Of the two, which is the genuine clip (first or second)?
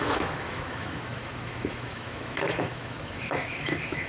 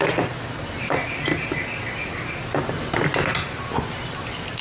second